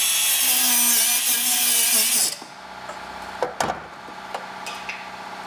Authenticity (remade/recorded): recorded